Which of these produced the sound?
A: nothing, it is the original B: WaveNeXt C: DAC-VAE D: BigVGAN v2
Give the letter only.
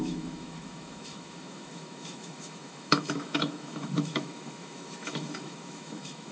C